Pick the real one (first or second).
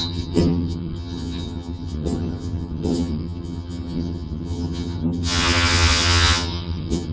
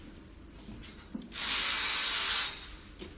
second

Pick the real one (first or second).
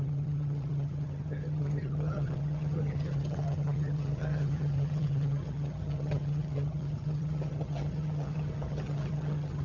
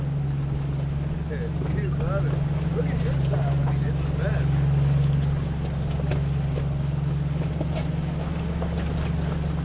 second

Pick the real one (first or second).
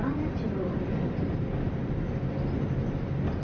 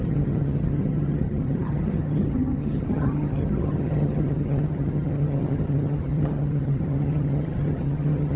first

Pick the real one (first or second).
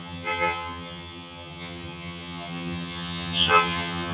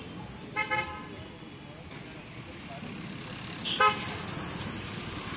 second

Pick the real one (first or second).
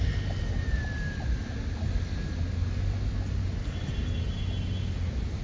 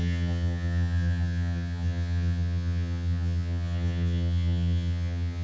first